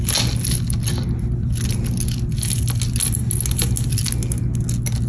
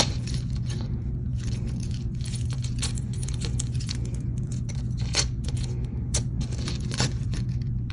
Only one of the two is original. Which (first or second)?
first